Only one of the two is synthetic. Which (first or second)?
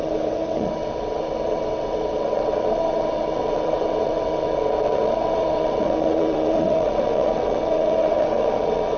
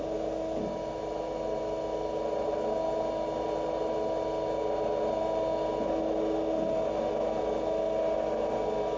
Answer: first